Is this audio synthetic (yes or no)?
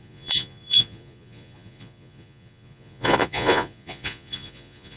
yes